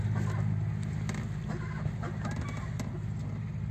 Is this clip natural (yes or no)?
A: yes